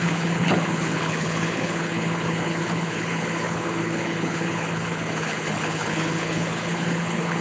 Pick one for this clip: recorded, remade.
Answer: remade